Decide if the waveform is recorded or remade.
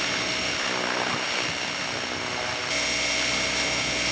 recorded